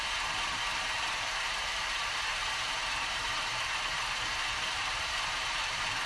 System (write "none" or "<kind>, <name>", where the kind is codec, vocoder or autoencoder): vocoder, BigVGAN v2